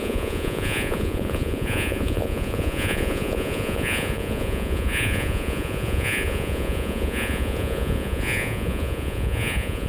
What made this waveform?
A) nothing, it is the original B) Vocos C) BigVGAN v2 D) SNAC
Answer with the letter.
B